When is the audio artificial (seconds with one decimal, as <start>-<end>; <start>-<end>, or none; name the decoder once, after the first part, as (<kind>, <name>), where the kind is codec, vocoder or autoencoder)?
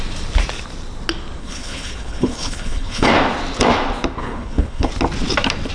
1.4-3.1 (codec, HILCodec); 4.2-4.9